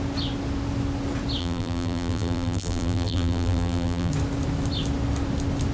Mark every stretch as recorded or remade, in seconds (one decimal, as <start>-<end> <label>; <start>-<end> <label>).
0.0-1.4 recorded; 1.4-4.1 remade; 4.1-5.7 recorded